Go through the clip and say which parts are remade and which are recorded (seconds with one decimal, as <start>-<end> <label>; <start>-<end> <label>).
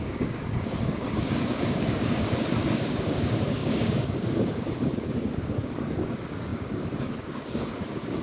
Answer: 0.0-8.2 remade